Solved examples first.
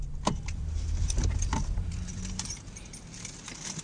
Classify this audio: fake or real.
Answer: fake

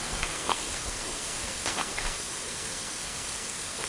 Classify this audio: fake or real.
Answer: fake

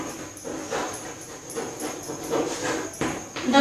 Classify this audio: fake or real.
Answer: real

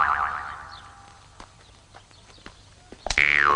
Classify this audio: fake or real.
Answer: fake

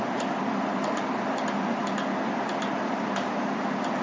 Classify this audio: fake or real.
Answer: real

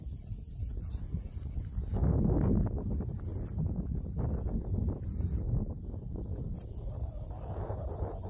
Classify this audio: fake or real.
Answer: real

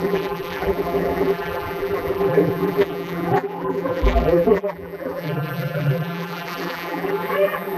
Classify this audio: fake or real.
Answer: fake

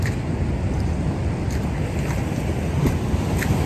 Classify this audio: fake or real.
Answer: real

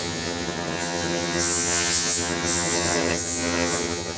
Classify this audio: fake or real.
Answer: fake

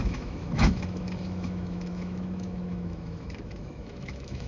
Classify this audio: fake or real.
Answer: fake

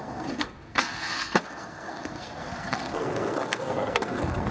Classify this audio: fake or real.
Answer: fake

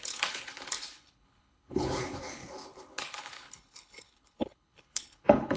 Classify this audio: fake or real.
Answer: fake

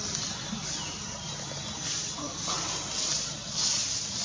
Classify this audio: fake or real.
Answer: real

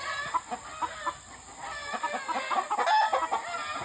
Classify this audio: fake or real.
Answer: real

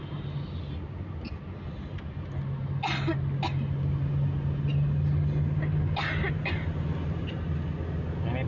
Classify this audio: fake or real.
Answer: real